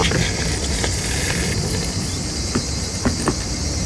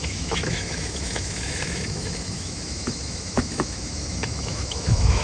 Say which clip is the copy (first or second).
second